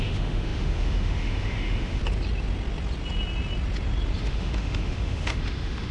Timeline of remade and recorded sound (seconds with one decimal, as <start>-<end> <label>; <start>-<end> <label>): 0.0-2.0 remade; 2.0-4.2 recorded; 4.2-5.9 remade